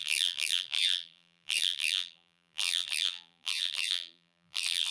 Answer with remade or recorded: remade